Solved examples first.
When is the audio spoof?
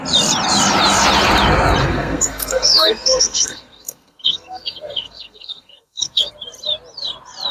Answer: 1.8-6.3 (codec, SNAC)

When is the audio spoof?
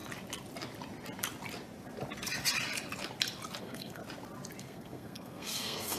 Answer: 3.6-4.0 (codec, SNAC); 4.6-6.0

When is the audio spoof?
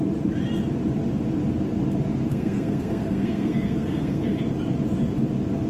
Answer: 2.3-4.4 (codec, SNAC)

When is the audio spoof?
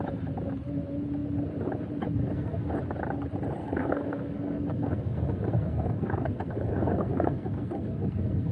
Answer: 2.2-2.7 (codec, SNAC); 3.6-8.5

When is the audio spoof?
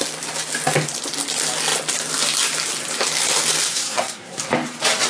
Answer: 3.7-4.4 (codec, SNAC)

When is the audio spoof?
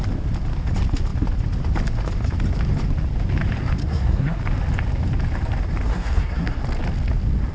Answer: 3.8-4.4 (codec, SNAC); 5.9-6.6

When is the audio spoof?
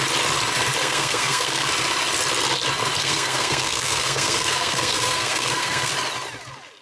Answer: 0.8-1.7 (codec, SNAC); 3.0-5.9